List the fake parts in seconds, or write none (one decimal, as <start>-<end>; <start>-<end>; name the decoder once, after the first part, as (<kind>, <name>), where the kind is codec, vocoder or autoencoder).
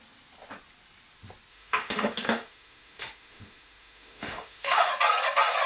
1.5-4.9 (autoencoder, DAC-VAE)